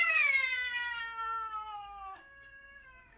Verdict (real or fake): fake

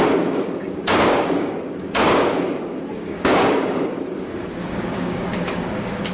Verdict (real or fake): fake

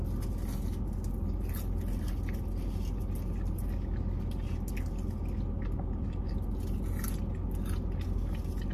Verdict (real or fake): real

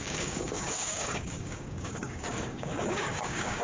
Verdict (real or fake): fake